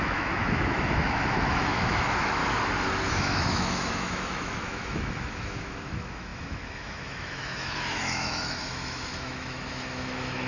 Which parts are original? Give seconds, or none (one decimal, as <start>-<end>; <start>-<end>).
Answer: 2.4-3.1

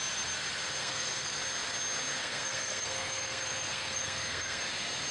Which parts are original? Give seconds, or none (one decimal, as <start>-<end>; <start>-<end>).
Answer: 0.0-0.8; 1.4-2.2; 4.6-5.1